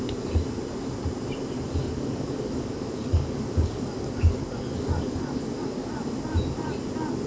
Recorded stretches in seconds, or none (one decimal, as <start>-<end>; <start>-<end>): 0.0-1.8; 5.9-7.3